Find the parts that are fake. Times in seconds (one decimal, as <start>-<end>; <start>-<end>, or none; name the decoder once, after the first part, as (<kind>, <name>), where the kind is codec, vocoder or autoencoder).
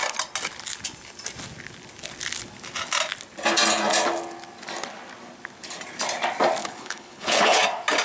6.6-7.6 (codec, HILCodec)